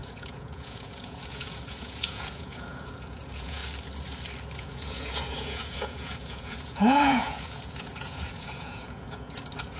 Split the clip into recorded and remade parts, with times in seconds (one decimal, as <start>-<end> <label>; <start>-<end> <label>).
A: 0.0-3.6 remade; 3.6-4.5 recorded; 4.5-9.8 remade